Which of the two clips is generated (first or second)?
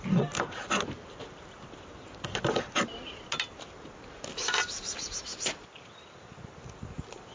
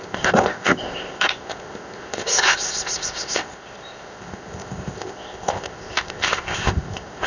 second